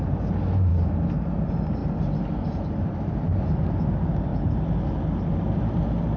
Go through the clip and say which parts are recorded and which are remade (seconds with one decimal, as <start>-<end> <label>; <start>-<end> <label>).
0.0-6.2 recorded